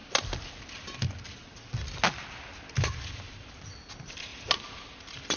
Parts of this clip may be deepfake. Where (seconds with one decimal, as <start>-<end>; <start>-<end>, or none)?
none